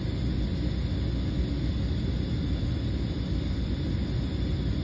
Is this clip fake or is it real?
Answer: real